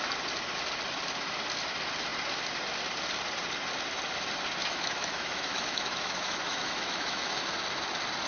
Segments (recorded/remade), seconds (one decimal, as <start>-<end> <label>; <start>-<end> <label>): 0.0-4.6 recorded; 4.6-7.4 remade; 7.4-8.3 recorded